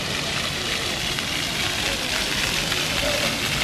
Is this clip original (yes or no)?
no